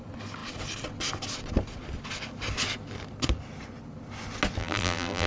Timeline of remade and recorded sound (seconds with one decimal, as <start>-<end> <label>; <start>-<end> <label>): 0.0-4.6 recorded; 4.6-5.3 remade